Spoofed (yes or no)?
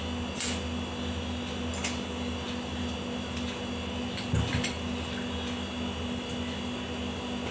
no